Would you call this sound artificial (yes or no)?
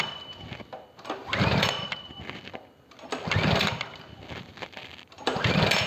no